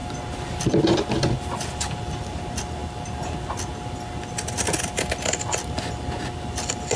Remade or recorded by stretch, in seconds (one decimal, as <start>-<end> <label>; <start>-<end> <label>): 0.0-7.0 recorded